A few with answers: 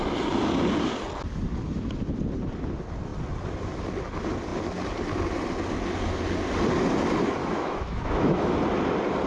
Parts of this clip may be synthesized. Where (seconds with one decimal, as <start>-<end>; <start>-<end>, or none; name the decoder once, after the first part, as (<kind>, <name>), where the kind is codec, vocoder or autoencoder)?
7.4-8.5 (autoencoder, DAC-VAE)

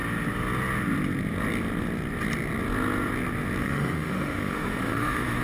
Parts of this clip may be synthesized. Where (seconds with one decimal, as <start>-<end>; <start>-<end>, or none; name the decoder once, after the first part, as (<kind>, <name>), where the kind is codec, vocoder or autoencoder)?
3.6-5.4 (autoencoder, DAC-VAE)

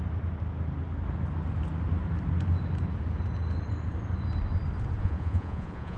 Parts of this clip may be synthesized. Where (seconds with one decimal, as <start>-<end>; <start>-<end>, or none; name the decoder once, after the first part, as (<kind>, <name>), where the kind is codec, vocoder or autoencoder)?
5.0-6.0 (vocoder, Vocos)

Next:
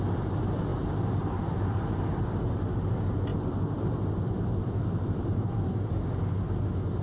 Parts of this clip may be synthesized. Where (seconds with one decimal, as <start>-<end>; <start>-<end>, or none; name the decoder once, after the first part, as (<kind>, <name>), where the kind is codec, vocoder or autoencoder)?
0.7-1.8 (vocoder, BigVGAN v2); 3.3-5.9

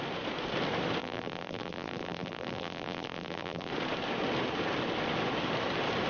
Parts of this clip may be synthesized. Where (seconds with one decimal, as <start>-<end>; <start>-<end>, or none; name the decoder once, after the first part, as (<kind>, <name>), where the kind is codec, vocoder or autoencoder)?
1.0-3.7 (vocoder, BigVGAN v2)

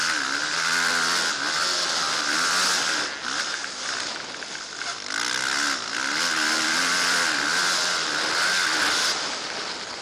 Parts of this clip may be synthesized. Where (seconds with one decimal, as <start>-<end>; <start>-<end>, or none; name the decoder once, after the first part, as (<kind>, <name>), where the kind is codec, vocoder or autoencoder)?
none

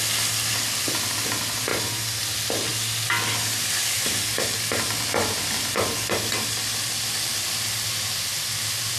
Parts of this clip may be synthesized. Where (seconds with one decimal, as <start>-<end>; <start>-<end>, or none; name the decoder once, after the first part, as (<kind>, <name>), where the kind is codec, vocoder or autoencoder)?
1.7-2.2 (vocoder, BigVGAN v2); 2.7-4.2